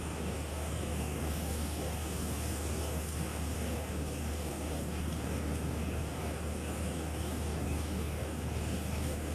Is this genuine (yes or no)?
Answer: no